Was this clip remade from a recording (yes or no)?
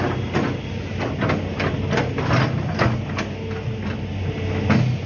no